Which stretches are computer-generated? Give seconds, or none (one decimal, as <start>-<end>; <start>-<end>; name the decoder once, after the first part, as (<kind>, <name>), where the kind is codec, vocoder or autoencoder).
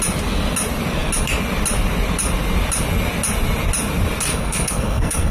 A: 4.3-5.3 (codec, SNAC)